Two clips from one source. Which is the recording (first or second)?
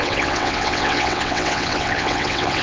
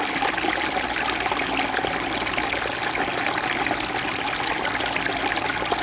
second